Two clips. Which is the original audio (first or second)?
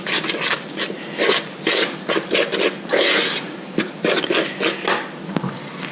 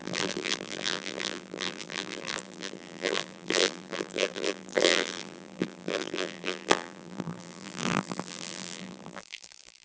first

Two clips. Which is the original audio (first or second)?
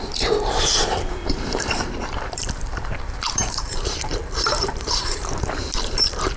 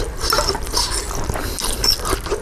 second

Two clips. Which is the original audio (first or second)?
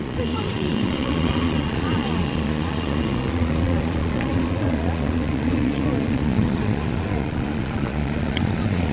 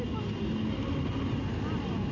second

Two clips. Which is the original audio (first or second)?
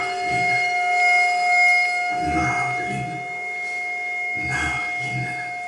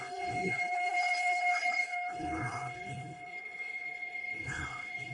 first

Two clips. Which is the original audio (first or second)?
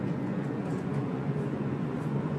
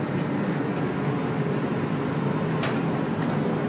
second